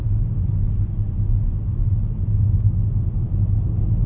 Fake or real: real